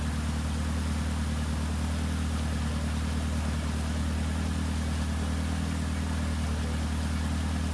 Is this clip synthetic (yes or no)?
no